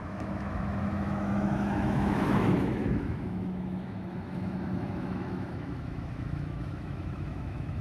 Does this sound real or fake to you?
fake